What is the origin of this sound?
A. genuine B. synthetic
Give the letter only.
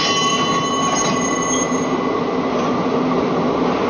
A